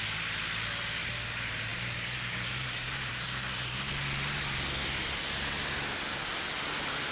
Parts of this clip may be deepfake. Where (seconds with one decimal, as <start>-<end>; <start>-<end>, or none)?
1.7-3.9